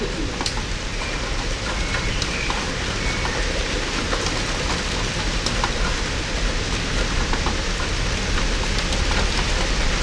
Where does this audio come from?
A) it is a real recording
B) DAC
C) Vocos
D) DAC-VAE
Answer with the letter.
A